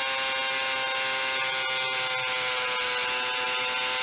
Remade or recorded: recorded